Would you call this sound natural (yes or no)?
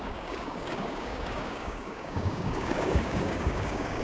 no